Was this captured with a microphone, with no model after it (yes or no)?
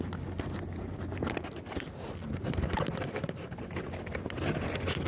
yes